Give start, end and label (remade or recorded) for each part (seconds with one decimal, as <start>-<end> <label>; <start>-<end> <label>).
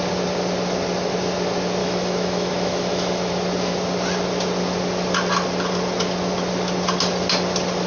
0.0-1.8 recorded; 1.8-3.3 remade; 3.3-7.9 recorded